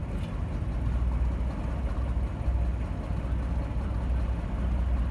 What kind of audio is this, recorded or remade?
recorded